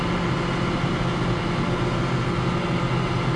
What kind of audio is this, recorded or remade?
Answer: recorded